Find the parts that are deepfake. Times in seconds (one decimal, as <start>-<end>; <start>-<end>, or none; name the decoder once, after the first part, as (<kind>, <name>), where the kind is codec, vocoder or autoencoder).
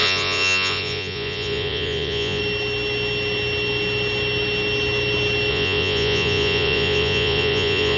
0.0-2.4 (vocoder, Vocos); 5.5-8.0